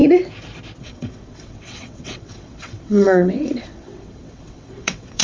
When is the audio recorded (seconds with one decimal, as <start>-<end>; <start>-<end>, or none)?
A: 0.0-0.8